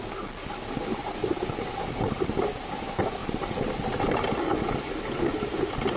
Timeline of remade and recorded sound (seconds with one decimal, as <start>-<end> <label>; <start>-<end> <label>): 0.0-6.0 recorded